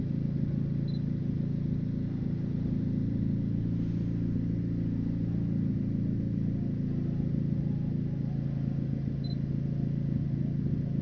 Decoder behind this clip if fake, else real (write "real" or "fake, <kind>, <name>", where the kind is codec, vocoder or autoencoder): real